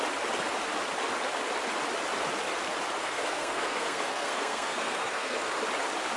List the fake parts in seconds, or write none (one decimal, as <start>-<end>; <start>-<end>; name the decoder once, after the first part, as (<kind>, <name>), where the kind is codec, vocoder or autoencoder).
3.0-5.5 (codec, SNAC)